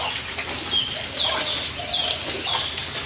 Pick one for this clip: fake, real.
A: real